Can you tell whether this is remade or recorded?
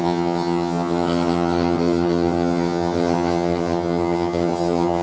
remade